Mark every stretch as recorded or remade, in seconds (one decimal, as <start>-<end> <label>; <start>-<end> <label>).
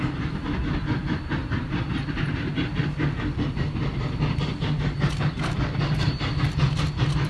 0.0-1.4 recorded; 1.4-2.5 remade; 2.5-7.3 recorded